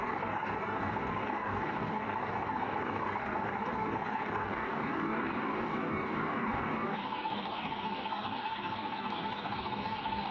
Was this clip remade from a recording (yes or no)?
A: yes